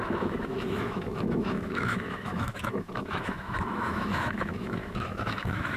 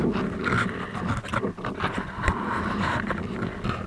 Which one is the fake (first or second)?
first